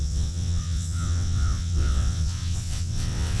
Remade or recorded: remade